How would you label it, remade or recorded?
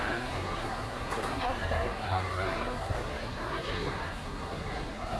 remade